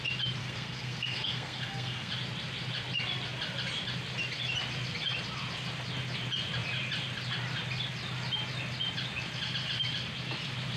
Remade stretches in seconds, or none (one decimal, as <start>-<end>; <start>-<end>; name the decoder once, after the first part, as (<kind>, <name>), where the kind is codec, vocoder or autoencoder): 0.4-2.1 (codec, SNAC)